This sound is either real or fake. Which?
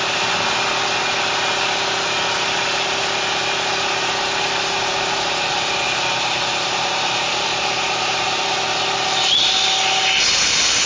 real